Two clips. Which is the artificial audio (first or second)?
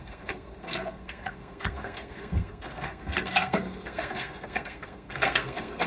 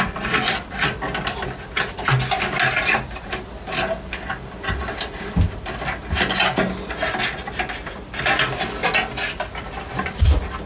first